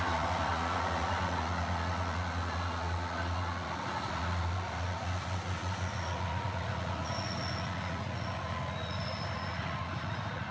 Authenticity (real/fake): fake